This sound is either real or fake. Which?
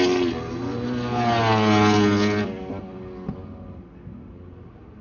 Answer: real